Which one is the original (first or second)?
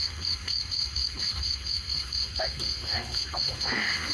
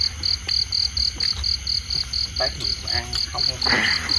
second